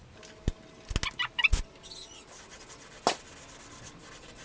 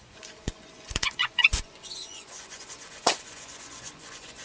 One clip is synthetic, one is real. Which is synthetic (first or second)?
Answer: second